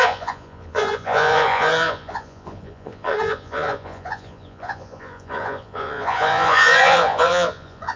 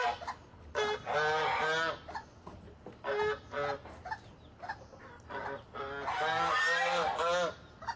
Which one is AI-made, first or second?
first